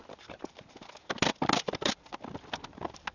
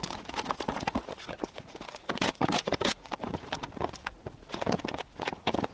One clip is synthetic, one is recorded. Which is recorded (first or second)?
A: first